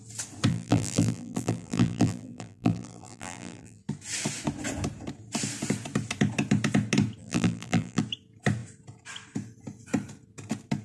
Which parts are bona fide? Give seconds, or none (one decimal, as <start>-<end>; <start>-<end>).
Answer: 0.0-0.5; 3.8-7.2; 8.0-10.8